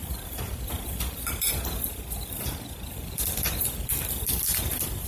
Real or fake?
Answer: fake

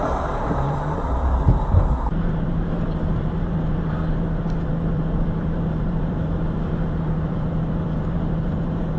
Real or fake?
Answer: fake